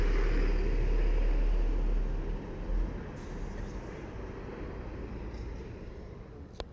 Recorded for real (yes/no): yes